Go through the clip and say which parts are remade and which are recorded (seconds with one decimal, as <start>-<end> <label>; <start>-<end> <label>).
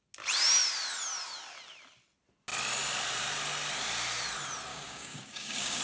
0.0-4.7 recorded; 4.7-5.8 remade